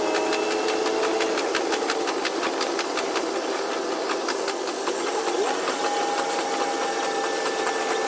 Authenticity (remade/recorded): recorded